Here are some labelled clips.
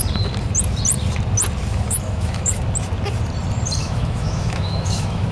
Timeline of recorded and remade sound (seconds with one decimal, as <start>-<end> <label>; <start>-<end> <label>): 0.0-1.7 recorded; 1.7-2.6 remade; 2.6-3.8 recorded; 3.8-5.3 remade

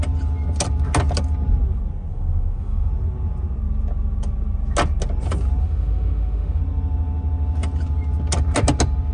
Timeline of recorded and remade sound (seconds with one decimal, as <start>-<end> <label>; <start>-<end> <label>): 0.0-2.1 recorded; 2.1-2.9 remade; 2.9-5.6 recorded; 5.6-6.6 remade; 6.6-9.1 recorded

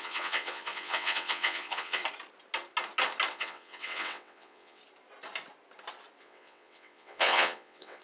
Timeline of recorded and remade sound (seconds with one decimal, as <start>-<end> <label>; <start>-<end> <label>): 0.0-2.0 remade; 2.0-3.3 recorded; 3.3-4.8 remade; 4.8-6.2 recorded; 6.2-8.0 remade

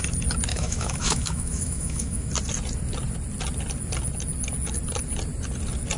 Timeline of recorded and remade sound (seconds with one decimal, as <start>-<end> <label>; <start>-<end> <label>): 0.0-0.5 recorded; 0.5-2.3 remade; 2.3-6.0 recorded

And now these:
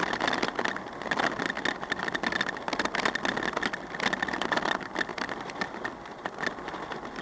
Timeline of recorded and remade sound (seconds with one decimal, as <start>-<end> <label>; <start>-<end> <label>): 0.0-5.1 recorded; 5.1-5.9 remade; 5.9-7.2 recorded